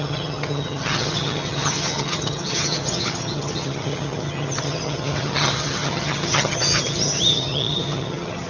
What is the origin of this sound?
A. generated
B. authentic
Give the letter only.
A